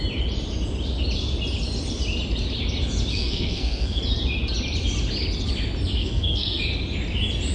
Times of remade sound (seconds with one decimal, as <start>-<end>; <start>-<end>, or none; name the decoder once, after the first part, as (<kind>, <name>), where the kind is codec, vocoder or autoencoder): 3.1-4.0 (codec, SNAC); 6.0-6.6